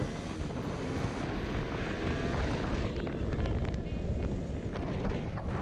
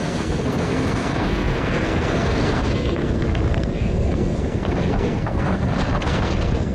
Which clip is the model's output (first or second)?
second